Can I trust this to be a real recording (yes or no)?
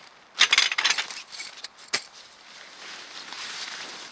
no